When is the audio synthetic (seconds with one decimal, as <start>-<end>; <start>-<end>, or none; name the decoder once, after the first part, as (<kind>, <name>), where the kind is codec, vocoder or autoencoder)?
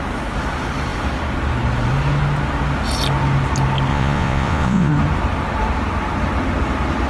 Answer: 3.9-4.9 (vocoder, Vocos)